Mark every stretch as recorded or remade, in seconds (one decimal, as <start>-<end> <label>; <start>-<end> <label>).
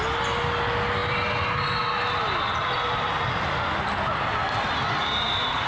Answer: 0.0-5.7 recorded